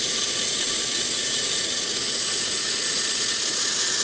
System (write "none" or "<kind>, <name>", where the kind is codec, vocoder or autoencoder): vocoder, Vocos